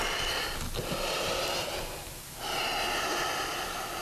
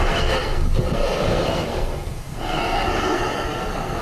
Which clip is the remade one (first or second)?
second